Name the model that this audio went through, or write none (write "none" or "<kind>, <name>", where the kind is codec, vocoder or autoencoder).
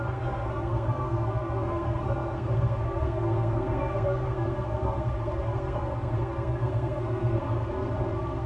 codec, SNAC